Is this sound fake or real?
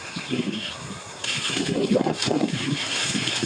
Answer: fake